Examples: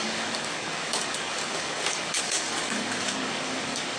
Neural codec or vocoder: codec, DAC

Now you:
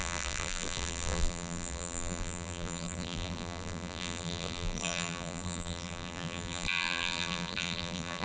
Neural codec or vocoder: vocoder, BigVGAN v2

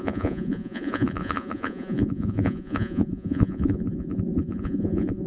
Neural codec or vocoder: vocoder, Vocos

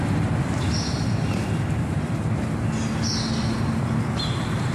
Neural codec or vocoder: none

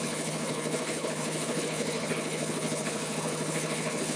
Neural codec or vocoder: codec, HILCodec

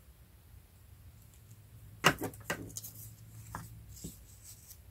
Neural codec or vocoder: none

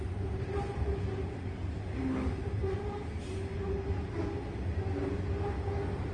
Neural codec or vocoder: none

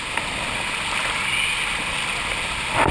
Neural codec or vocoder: none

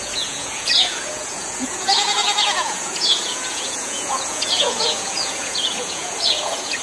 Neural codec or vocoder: vocoder, Vocos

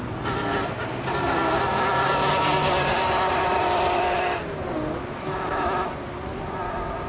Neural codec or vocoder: none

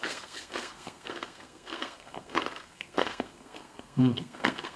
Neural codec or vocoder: codec, SNAC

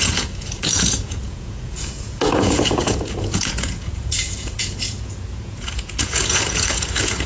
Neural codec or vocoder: vocoder, Vocos